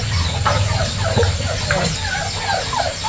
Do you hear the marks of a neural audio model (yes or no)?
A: no